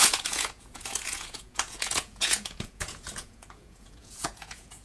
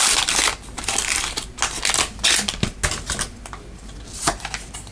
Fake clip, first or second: first